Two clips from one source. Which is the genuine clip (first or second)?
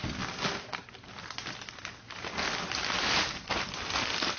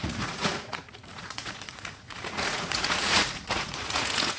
first